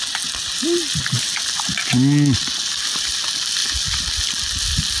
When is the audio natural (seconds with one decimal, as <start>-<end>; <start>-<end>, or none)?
0.0-5.0